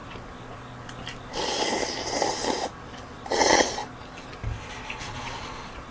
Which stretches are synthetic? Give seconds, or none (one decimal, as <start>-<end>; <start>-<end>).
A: 3.3-3.8; 5.0-5.9